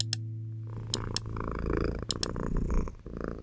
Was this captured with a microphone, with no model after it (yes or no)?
yes